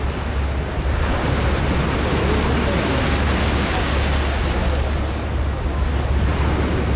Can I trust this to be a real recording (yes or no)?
yes